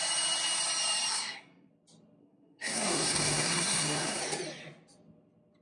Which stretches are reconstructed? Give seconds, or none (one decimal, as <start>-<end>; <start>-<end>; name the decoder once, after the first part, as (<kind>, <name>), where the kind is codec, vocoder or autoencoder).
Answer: 1.1-1.7 (codec, SNAC); 2.2-4.2